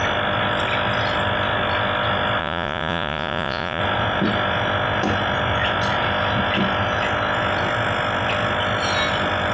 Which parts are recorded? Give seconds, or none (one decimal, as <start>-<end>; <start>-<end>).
0.0-2.4; 3.8-9.5